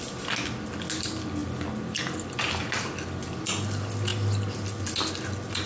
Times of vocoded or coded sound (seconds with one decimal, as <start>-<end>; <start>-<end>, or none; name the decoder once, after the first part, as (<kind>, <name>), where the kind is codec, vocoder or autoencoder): none

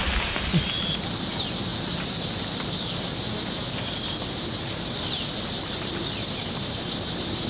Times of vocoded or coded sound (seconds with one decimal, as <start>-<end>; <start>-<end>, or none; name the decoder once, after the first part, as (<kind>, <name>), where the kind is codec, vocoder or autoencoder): none